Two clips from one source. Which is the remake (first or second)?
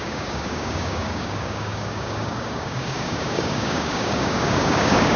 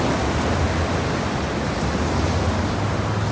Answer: first